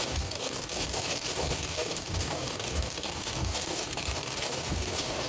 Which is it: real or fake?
fake